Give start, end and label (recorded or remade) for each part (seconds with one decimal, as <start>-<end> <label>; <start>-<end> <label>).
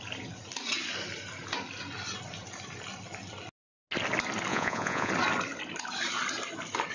0.0-4.5 recorded; 4.5-5.1 remade; 5.1-6.9 recorded